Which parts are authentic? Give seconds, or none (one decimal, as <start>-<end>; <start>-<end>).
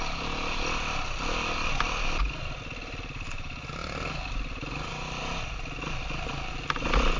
0.0-7.2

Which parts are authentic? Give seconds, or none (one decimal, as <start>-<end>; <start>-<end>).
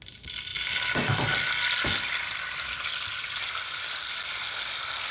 0.0-5.1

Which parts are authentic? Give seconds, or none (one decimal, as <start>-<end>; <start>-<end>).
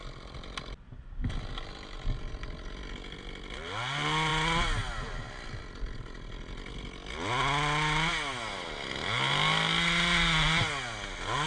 0.0-11.5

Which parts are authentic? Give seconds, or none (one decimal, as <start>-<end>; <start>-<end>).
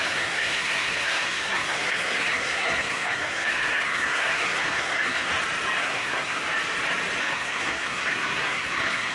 5.3-5.8; 6.4-7.2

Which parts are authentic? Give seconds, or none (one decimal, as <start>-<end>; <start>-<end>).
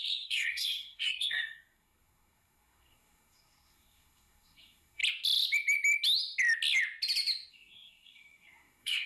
5.0-7.5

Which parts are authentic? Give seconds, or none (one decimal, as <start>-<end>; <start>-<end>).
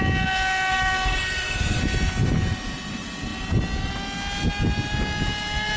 0.0-0.7; 1.8-5.8